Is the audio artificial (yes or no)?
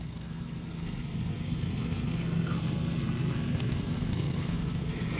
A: yes